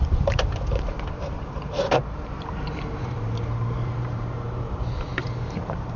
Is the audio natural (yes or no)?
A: no